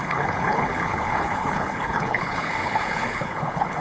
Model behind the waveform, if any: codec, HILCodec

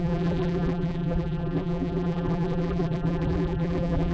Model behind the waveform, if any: vocoder, BigVGAN v2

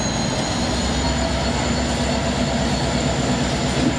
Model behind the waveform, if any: none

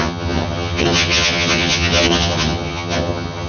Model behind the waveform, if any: vocoder, HiFi-GAN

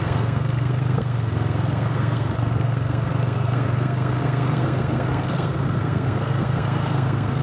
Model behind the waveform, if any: codec, SNAC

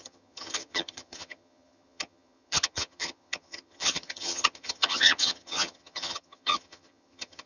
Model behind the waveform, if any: vocoder, HiFi-GAN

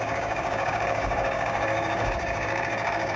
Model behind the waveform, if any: codec, DAC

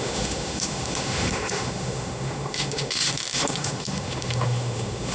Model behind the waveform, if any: autoencoder, DAC-VAE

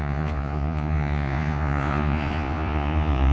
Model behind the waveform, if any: vocoder, Vocos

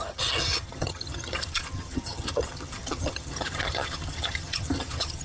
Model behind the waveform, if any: vocoder, HiFi-GAN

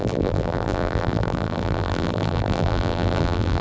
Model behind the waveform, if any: vocoder, BigVGAN v2